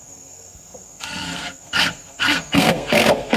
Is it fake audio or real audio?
fake